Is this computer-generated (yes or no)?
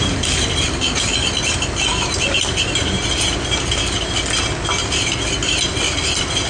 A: no